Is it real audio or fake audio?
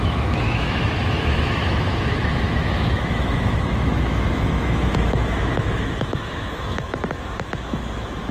fake